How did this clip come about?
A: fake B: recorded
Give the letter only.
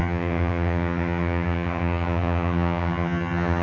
A